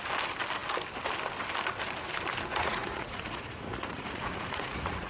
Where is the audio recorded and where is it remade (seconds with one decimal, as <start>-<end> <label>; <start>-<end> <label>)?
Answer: 0.0-2.5 recorded; 2.5-5.1 remade